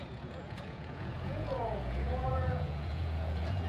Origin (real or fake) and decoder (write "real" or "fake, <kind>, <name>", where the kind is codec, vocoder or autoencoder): fake, vocoder, Vocos